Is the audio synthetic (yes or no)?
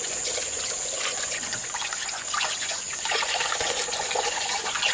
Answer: yes